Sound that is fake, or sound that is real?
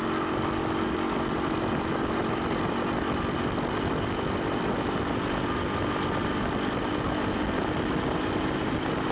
real